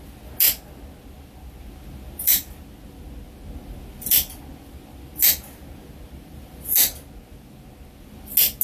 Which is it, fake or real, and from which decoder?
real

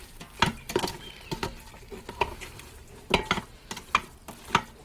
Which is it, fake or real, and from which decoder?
real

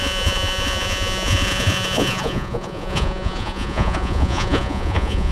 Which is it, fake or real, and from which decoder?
fake, vocoder, Vocos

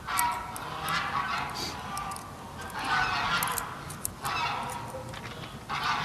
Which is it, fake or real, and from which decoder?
real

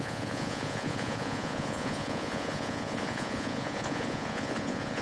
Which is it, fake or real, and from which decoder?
fake, vocoder, Vocos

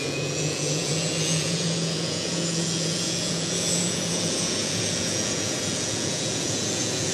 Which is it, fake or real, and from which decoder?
fake, vocoder, Vocos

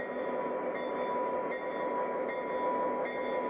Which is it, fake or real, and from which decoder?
real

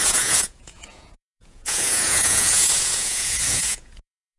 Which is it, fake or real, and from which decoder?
fake, vocoder, Vocos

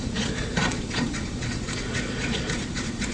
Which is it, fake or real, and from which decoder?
fake, vocoder, Vocos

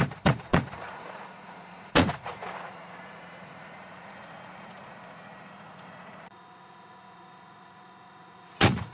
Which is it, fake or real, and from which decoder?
fake, vocoder, Vocos